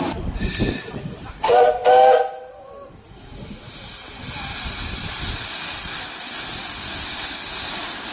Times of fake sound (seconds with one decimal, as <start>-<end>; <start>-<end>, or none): 0.0-1.8; 5.3-8.1